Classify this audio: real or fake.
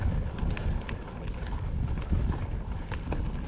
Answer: real